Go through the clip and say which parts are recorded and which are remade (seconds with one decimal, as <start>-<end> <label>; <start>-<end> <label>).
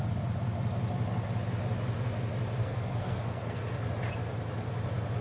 0.0-2.6 recorded; 2.6-3.6 remade; 3.6-5.2 recorded